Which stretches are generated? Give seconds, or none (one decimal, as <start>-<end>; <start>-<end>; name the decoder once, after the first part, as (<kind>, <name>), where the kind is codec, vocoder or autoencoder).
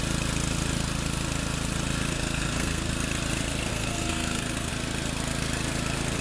2.1-2.9 (codec, SNAC); 3.7-4.7